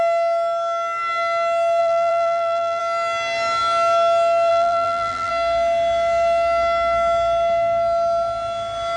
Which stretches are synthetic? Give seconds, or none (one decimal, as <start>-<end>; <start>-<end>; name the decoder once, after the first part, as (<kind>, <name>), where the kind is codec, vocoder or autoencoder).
1.8-2.8 (vocoder, BigVGAN v2); 4.5-5.3